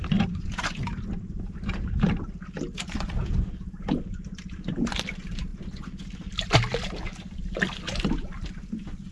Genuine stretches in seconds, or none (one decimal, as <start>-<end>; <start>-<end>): 0.0-9.1